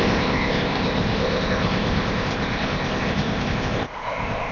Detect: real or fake fake